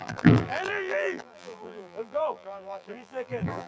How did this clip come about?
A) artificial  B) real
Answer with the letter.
A